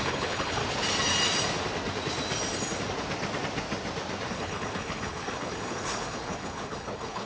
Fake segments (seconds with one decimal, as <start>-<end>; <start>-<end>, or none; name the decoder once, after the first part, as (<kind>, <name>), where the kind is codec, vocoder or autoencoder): 0.0-0.6 (codec, HILCodec); 4.3-7.3